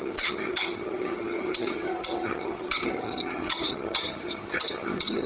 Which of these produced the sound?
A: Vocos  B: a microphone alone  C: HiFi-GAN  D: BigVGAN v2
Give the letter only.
C